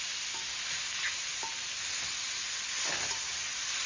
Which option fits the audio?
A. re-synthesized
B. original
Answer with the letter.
B